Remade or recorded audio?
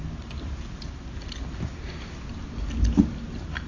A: recorded